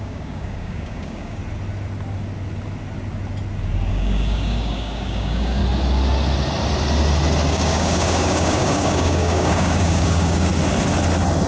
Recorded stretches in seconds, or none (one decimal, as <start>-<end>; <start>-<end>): 1.4-3.9; 5.6-7.5; 10.5-11.5